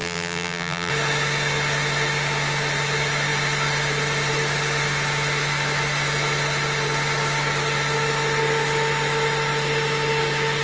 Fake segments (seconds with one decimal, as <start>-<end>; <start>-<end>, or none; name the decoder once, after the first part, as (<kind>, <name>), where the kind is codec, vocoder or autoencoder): 0.0-0.9 (vocoder, BigVGAN v2)